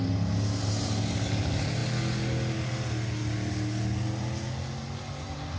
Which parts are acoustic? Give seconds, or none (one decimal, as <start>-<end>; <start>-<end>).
0.0-5.6